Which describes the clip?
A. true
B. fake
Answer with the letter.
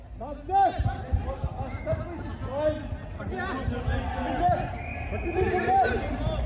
A